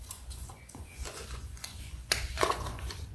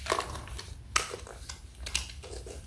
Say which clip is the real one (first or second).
second